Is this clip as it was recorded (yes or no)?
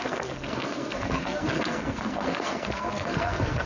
no